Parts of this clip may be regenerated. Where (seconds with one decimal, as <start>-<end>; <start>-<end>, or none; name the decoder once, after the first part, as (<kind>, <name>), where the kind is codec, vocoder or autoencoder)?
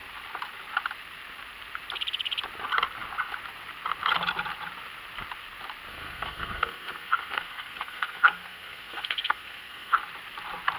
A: 5.9-10.0 (codec, SNAC)